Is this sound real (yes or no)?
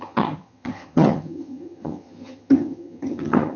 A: no